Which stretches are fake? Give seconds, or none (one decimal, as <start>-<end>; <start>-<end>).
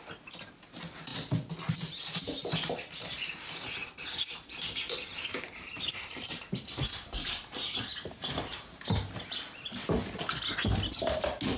3.8-8.7